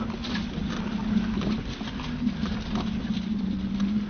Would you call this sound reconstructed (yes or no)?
no